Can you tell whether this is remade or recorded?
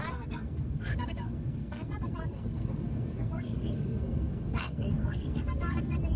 remade